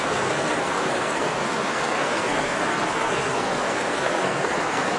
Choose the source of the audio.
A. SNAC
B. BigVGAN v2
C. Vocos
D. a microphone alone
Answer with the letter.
A